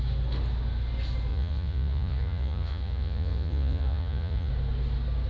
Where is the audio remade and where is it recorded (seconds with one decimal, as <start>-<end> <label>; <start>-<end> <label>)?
0.0-1.3 recorded; 1.3-4.5 remade; 4.5-5.3 recorded